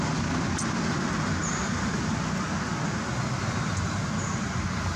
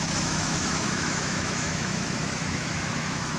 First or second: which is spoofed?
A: second